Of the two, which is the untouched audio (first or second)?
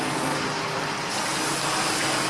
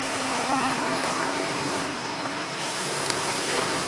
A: first